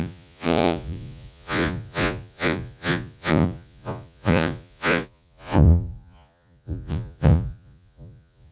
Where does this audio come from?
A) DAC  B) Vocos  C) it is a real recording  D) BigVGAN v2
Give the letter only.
B